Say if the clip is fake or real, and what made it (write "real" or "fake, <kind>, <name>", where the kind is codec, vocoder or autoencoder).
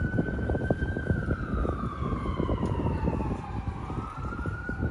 fake, vocoder, BigVGAN v2